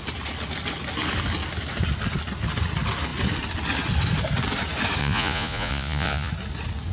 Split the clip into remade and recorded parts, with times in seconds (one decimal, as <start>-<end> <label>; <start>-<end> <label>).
0.0-5.0 recorded; 5.0-6.3 remade; 6.3-6.9 recorded